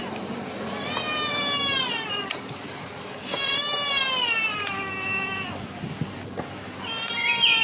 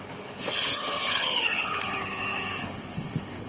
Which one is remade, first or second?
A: second